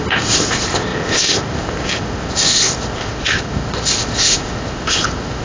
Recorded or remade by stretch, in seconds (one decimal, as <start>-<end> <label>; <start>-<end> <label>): 0.0-5.4 remade